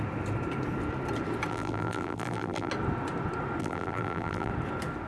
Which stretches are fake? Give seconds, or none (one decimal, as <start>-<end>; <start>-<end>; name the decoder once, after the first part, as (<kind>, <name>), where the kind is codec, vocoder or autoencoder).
1.5-2.7 (vocoder, BigVGAN v2); 3.6-4.5